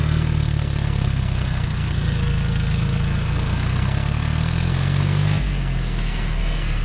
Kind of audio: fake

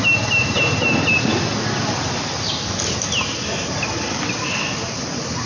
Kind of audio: real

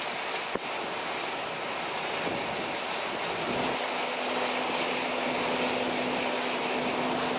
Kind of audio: real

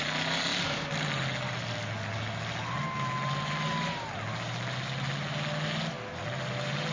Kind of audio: real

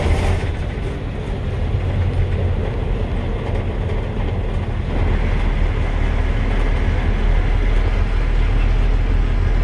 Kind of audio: real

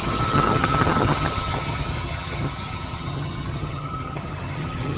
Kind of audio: fake